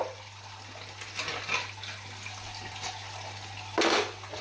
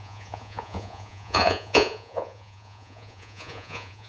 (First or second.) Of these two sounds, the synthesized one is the second